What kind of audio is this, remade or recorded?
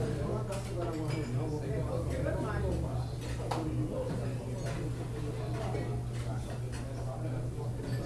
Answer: recorded